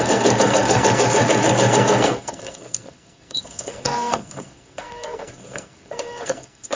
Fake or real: fake